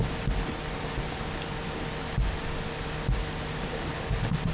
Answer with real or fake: real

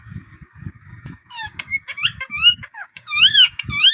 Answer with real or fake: fake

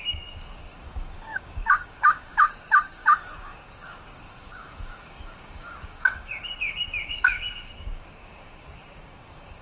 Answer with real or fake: fake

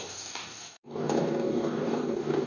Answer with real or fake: fake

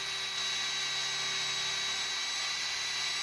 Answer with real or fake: real